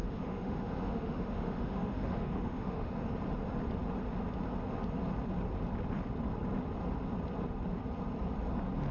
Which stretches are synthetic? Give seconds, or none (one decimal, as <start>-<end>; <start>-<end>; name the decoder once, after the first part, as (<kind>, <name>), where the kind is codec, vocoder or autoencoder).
0.0-3.1 (autoencoder, DAC-VAE)